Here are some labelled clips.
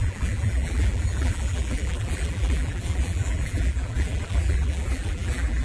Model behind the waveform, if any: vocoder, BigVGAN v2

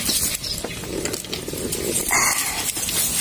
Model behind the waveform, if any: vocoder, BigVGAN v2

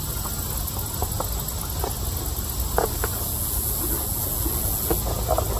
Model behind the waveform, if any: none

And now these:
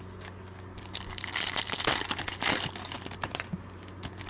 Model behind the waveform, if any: none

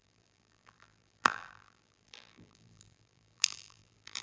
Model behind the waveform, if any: vocoder, BigVGAN v2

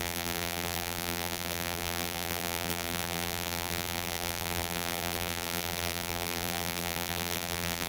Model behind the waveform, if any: vocoder, BigVGAN v2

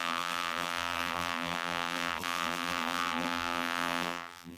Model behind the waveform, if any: vocoder, BigVGAN v2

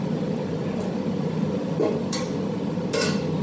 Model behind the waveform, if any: vocoder, BigVGAN v2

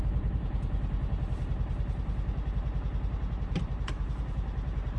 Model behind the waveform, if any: vocoder, BigVGAN v2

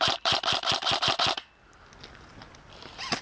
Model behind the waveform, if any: vocoder, BigVGAN v2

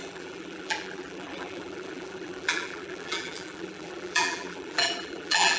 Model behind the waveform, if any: vocoder, BigVGAN v2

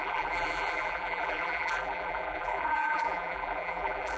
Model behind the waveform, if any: vocoder, BigVGAN v2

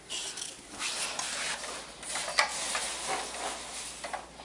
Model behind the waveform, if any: none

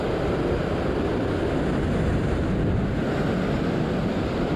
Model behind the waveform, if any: none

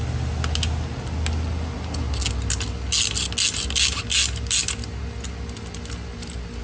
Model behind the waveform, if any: none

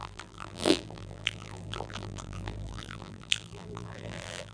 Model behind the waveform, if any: vocoder, BigVGAN v2